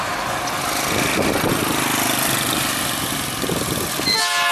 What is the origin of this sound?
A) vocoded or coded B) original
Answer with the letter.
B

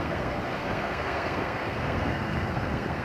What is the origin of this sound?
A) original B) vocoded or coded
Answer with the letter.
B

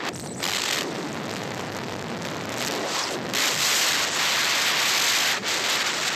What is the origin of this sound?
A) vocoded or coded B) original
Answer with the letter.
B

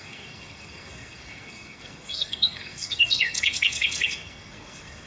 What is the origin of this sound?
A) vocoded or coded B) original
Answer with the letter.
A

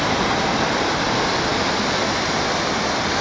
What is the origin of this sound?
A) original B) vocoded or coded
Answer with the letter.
A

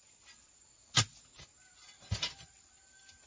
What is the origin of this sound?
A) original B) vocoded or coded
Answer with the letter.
A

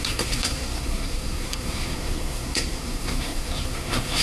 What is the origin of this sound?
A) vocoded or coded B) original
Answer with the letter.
A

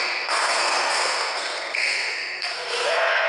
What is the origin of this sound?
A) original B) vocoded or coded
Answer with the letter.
B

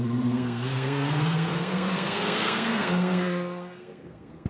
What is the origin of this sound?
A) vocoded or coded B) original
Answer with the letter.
A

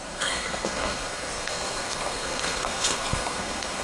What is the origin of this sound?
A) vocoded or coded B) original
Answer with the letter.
A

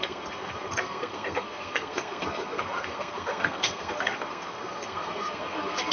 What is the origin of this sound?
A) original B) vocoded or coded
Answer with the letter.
B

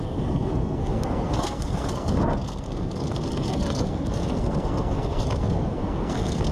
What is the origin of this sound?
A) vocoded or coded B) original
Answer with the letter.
A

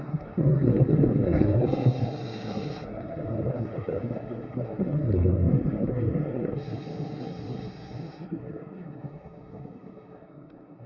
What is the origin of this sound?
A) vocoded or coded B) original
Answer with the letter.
A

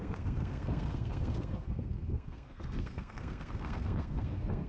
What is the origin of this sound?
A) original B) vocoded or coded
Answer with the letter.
B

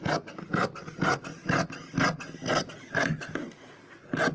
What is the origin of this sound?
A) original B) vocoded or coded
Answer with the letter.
A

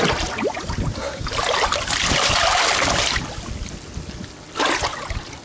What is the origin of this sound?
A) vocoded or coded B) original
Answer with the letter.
B